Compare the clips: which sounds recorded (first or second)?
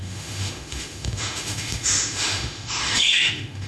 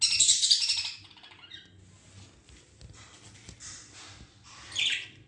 second